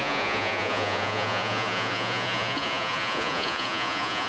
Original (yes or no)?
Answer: no